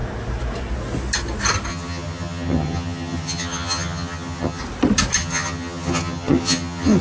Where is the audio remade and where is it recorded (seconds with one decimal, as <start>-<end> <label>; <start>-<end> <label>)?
0.0-1.7 recorded; 1.7-4.6 remade; 4.6-5.2 recorded; 5.2-7.0 remade